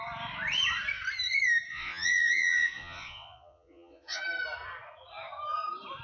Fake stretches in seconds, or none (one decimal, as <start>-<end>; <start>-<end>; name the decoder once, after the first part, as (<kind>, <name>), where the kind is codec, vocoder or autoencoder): 1.7-4.2 (vocoder, Vocos)